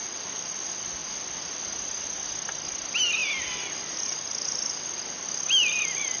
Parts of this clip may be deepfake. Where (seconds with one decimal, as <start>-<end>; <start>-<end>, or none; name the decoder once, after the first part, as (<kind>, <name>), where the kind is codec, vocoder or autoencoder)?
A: none